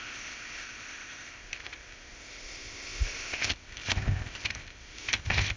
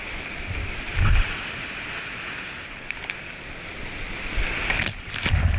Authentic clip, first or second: second